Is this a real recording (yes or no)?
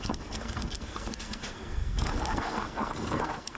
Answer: no